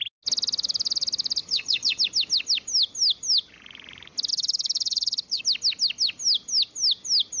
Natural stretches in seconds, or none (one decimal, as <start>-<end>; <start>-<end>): 0.0-1.4; 2.0-4.3; 5.4-7.4